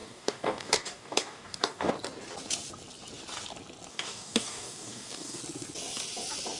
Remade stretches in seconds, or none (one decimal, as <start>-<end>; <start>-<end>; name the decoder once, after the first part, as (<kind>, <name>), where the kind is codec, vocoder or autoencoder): 0.0-1.9 (codec, DAC); 3.9-5.4